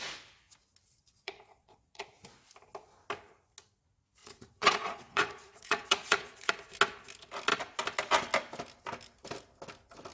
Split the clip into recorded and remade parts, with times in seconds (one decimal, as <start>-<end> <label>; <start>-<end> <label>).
0.0-0.9 recorded; 0.9-2.0 remade; 2.0-4.2 recorded; 4.2-6.5 remade; 6.5-10.1 recorded

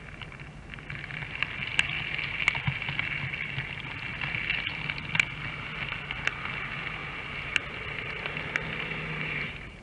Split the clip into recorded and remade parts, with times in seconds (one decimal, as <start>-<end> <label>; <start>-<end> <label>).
0.0-9.8 recorded

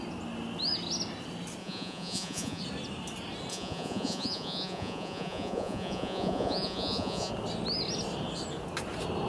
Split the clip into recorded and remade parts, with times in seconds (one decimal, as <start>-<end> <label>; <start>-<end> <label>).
0.0-1.6 recorded; 1.6-2.6 remade; 2.6-3.5 recorded; 3.5-7.3 remade; 7.3-9.3 recorded

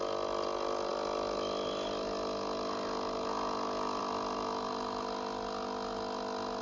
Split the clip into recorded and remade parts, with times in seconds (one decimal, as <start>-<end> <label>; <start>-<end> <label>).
0.0-6.6 recorded